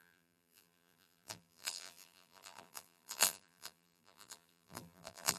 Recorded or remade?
remade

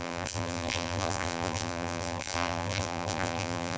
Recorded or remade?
remade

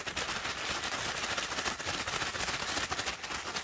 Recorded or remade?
recorded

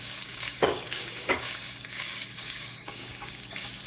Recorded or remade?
remade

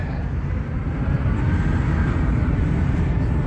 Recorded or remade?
remade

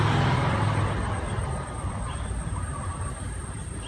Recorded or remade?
recorded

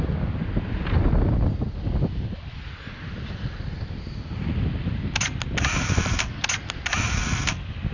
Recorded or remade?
recorded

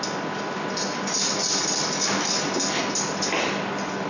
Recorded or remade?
recorded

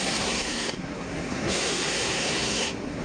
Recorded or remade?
remade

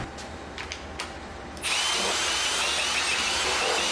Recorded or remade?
recorded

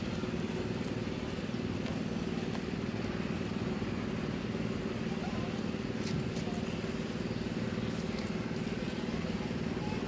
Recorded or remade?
recorded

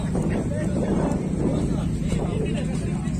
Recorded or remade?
recorded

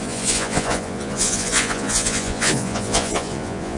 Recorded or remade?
remade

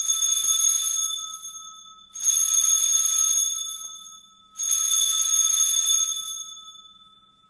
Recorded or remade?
recorded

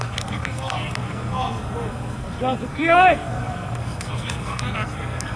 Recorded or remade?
remade